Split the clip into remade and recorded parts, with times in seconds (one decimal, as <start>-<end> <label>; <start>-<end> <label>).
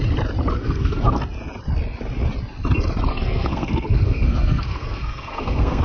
0.0-0.6 recorded; 0.6-1.2 remade; 1.2-3.1 recorded; 3.1-5.8 remade